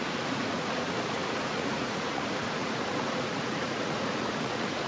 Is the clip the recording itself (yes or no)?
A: no